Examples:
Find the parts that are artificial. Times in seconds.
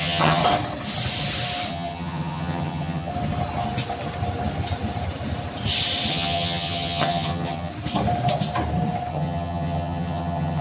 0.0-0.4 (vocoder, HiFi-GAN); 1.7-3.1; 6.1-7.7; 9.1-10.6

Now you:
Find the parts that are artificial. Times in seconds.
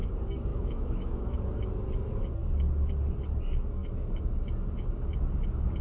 0.5-1.4 (autoencoder, DAC-VAE)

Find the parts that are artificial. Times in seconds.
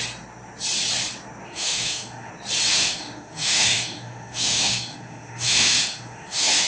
1.5-2.3 (autoencoder, DAC-VAE); 2.7-6.7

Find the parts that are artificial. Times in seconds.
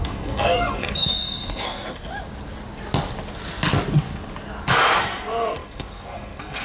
0.0-2.1 (codec, SNAC); 5.0-6.6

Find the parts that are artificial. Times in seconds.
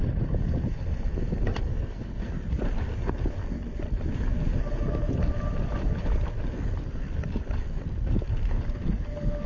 1.7-2.3 (codec, SNAC)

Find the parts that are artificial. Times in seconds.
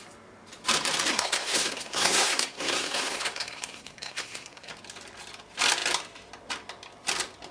1.1-4.7 (codec, SNAC)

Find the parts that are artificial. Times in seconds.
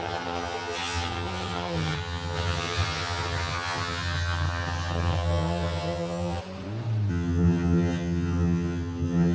0.0-6.4 (vocoder, HiFi-GAN); 7.1-9.3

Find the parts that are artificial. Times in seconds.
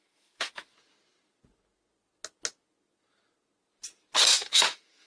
0.0-0.5 (autoencoder, DAC-VAE); 4.3-5.1